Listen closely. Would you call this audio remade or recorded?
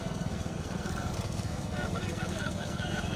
remade